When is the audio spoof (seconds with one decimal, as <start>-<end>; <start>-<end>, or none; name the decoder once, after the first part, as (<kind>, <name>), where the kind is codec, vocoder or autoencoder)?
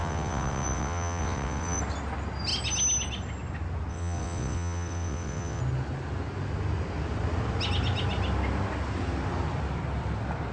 0.0-1.8 (vocoder, WaveNeXt); 3.9-5.6